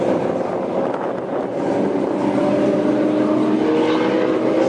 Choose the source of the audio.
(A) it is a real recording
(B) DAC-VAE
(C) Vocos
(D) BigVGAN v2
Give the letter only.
A